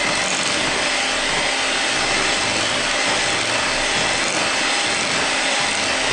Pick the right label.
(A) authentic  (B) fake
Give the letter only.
A